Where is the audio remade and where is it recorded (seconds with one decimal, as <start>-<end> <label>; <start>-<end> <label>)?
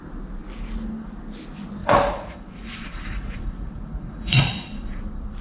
0.0-1.8 recorded; 1.8-5.0 remade; 5.0-5.4 recorded